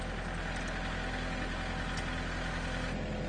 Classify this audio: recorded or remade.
recorded